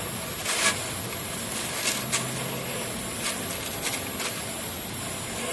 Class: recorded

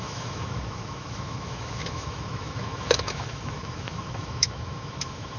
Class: remade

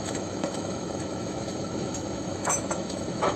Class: remade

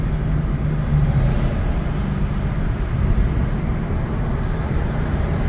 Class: recorded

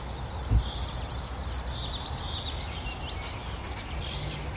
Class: recorded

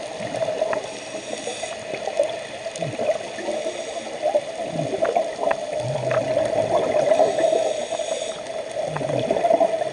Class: recorded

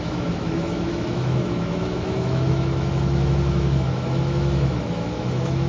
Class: remade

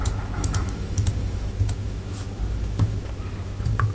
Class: remade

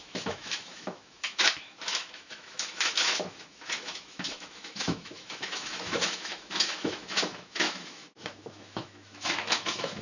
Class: remade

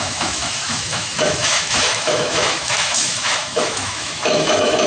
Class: remade